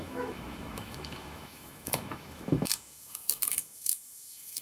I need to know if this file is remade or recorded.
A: remade